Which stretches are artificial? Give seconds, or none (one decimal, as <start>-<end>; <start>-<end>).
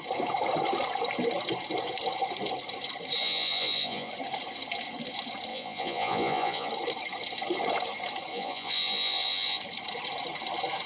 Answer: 3.2-4.1; 5.5-6.7; 8.3-9.6